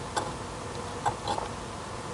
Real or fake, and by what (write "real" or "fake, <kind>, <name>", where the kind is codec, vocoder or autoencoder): real